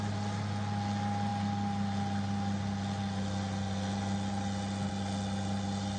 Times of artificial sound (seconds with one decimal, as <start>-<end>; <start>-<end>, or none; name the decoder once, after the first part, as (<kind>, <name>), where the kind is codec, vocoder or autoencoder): none